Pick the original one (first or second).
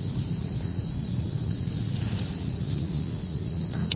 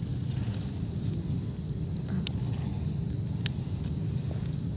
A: second